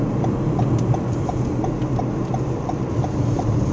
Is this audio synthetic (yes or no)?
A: no